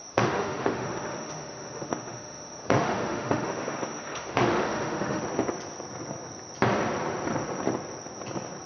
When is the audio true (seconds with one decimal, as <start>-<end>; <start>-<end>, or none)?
5.2-8.7